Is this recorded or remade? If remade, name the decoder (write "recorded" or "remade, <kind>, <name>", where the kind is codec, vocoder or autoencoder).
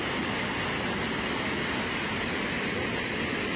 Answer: recorded